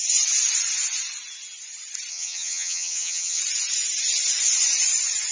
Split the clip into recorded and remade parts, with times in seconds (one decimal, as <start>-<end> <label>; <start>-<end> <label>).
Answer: 0.0-2.1 recorded; 2.1-3.4 remade; 3.4-5.3 recorded